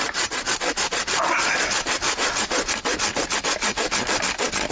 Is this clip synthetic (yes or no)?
no